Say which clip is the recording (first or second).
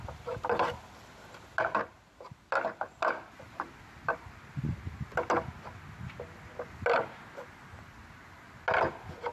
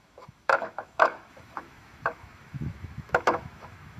first